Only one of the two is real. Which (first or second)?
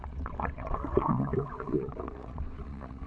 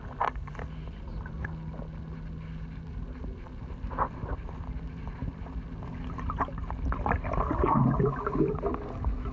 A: second